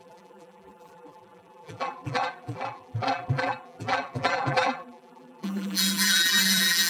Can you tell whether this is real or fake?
fake